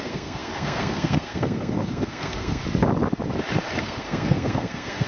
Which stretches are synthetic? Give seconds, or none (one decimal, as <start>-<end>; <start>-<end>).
0.0-2.6; 3.8-5.1

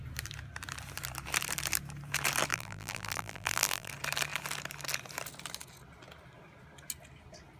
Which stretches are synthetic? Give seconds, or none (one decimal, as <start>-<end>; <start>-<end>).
2.5-3.9

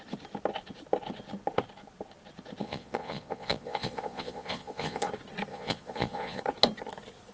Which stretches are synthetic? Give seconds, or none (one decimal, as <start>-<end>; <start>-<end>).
2.6-5.1; 5.5-6.4

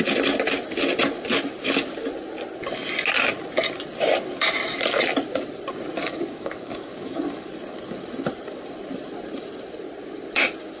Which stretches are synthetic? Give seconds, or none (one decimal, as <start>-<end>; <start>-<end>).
6.0-7.2

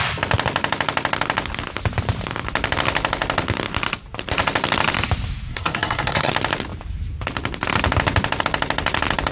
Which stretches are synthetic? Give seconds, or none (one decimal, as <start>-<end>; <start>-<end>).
5.5-6.3

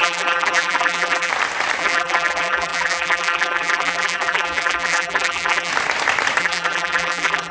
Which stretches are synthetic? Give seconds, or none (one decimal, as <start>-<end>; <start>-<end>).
0.0-1.3; 1.8-5.7; 6.4-7.5

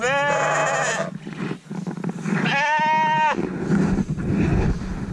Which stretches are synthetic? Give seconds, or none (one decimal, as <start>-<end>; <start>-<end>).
none

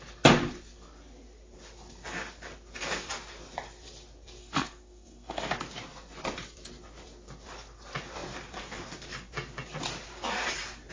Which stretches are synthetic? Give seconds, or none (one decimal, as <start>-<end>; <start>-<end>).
4.4-5.4